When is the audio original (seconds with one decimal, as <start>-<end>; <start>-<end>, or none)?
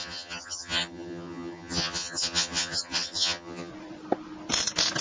3.7-5.0